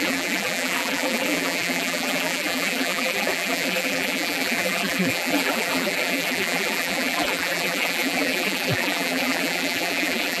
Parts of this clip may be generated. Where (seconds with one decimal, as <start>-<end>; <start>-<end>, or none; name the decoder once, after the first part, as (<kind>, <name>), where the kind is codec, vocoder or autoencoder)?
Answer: 0.0-10.4 (vocoder, BigVGAN v2)

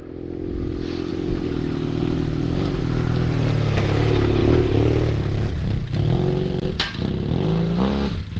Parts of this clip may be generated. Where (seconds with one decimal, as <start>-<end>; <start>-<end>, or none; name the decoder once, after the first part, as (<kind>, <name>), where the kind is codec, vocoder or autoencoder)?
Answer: 1.1-2.8 (vocoder, BigVGAN v2)